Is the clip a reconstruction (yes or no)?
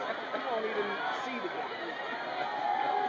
no